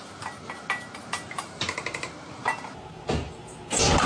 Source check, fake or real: real